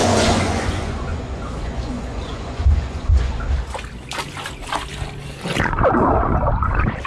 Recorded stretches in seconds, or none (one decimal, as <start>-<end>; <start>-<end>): 3.4-7.1